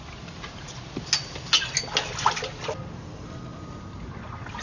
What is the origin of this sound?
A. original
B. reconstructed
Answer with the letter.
A